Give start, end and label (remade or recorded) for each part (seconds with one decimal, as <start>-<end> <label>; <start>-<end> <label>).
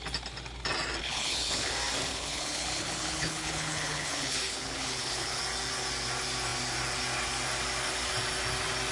0.0-1.0 recorded; 1.0-1.7 remade; 1.7-2.1 recorded; 2.1-5.4 remade; 5.4-8.9 recorded